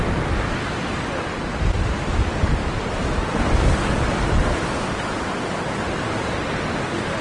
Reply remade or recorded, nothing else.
remade